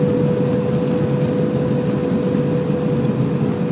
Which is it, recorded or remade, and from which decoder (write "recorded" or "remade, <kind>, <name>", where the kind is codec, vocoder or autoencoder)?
recorded